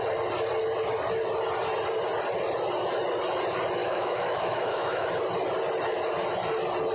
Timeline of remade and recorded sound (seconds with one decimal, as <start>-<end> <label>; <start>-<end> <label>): 0.0-3.8 recorded; 3.8-5.1 remade; 5.1-6.9 recorded